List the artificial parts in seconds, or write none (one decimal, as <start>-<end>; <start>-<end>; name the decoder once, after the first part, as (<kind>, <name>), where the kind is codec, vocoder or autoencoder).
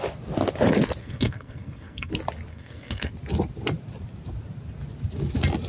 1.0-2.1 (codec, SNAC); 2.5-3.1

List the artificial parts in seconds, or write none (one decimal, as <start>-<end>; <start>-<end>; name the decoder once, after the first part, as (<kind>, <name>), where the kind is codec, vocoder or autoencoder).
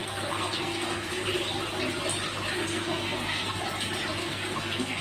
0.0-1.1 (codec, SNAC); 2.6-3.6; 4.2-5.0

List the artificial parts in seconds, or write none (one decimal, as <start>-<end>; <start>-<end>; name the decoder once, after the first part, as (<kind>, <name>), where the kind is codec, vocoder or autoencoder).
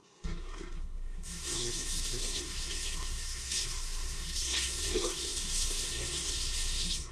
0.0-7.1 (codec, SNAC)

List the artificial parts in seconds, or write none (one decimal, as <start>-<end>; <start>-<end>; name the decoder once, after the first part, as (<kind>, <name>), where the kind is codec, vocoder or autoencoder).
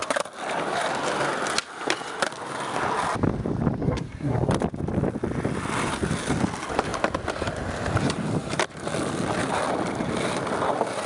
3.8-4.5 (codec, SNAC)